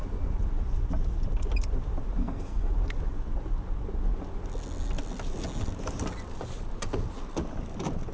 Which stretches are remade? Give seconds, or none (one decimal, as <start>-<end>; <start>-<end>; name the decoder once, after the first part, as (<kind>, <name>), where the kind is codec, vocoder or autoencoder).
2.2-2.7 (codec, SNAC)

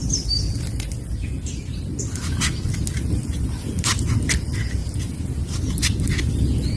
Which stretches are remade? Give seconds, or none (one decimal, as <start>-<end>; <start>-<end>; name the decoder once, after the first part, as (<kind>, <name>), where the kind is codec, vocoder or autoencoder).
4.8-5.4 (vocoder, BigVGAN v2)

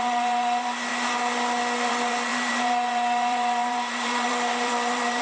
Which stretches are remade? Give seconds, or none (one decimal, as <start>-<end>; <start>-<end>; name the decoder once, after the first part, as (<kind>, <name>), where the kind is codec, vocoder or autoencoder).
0.0-0.9 (vocoder, BigVGAN v2); 1.9-5.2

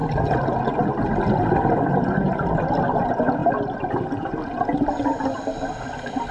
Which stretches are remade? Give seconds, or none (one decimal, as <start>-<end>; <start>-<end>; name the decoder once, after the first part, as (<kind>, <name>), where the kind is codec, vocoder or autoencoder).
none